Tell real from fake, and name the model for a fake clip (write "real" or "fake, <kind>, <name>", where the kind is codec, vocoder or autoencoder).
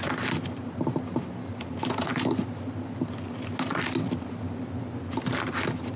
real